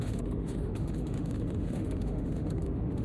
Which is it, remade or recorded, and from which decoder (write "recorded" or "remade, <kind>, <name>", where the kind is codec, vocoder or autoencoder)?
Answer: remade, autoencoder, DAC-VAE